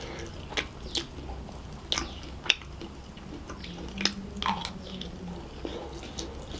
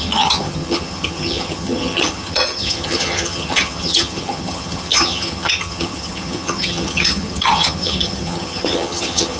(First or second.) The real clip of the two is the first